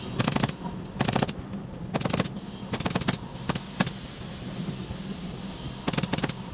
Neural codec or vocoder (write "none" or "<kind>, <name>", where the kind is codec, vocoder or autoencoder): none